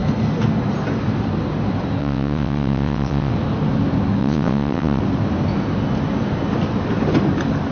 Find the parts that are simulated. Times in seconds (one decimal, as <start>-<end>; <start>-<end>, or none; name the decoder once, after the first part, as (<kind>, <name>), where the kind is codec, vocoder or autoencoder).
2.0-3.3 (vocoder, WaveNeXt); 4.2-5.0